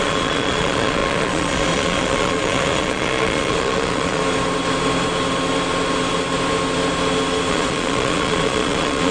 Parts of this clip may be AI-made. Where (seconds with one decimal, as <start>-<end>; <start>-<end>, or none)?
0.0-4.2; 7.5-9.1